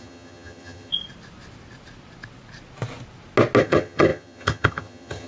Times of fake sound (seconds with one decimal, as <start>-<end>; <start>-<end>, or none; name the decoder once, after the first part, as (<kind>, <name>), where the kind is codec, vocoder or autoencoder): 0.0-0.9 (vocoder, HiFi-GAN); 3.6-5.3